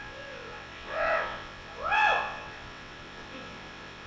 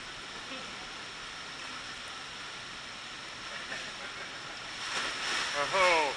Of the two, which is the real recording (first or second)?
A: second